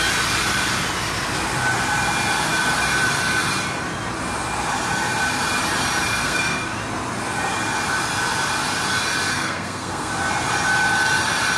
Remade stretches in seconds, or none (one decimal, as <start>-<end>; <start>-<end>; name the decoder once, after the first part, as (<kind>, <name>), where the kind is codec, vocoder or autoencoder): 6.2-6.8 (codec, SNAC); 9.3-10.1